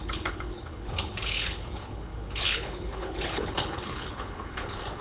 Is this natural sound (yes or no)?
no